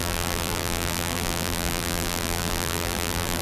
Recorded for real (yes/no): no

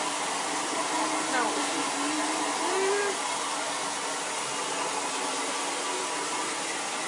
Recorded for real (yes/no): yes